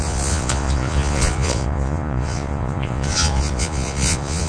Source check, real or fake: fake